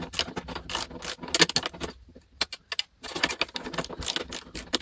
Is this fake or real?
real